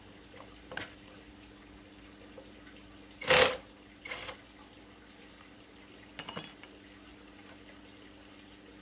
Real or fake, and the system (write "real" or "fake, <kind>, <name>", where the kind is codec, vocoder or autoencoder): real